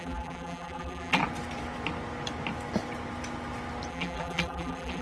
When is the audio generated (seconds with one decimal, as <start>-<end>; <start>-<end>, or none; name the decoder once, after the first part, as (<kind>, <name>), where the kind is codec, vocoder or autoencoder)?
0.0-1.2 (vocoder, BigVGAN v2); 3.9-5.0

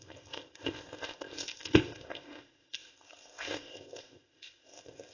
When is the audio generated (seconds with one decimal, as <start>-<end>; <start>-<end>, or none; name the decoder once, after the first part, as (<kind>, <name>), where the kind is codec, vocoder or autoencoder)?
0.0-5.1 (codec, ZipCodec)

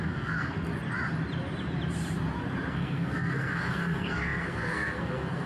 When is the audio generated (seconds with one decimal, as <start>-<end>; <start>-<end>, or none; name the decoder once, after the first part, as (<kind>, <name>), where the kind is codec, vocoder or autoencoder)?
0.0-0.7 (codec, SNAC); 2.7-5.5

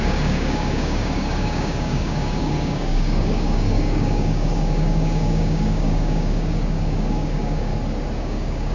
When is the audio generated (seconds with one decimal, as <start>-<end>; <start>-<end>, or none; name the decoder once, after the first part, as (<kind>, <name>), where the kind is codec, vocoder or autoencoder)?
0.0-7.7 (codec, DAC); 8.2-8.7

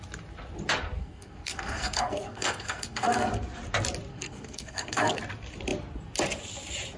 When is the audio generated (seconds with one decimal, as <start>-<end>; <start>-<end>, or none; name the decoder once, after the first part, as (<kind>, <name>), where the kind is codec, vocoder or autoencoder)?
1.0-3.3 (codec, SNAC); 4.1-5.2

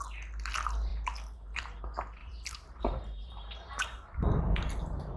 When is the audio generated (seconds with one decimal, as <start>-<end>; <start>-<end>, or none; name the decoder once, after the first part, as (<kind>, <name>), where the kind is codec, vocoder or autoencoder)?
0.9-1.8 (vocoder, BigVGAN v2); 2.2-4.4

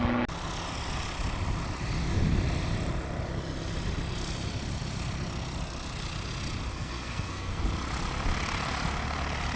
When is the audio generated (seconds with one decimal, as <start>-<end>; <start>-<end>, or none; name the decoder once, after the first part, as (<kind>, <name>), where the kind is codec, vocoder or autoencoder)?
6.7-7.6 (codec, SNAC)

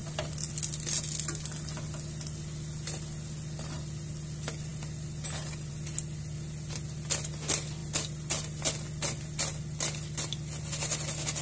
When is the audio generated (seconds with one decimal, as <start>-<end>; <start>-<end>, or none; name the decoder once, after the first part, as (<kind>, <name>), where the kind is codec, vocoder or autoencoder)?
none